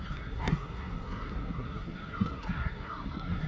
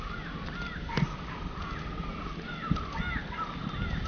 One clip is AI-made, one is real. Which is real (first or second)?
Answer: second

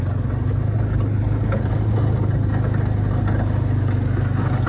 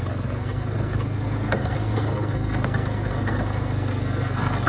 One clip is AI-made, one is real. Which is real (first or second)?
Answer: first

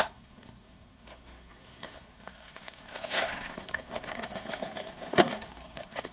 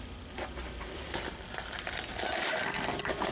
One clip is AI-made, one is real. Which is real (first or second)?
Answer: second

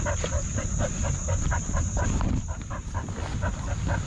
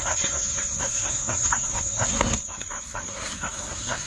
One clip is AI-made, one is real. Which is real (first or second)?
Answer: first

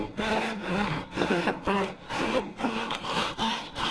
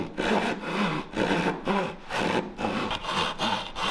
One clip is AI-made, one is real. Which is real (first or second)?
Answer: second